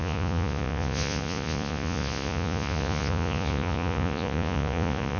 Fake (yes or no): yes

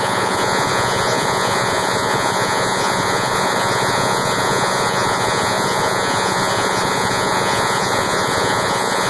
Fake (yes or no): yes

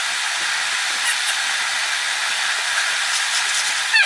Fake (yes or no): no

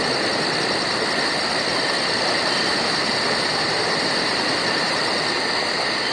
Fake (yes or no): no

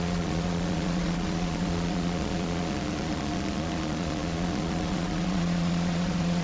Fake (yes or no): yes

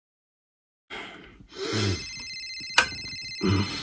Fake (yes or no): no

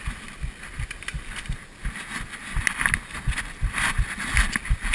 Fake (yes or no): no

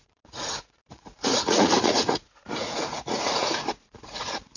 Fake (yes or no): yes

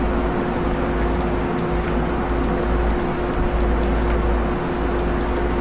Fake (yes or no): no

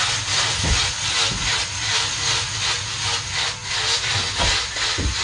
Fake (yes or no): no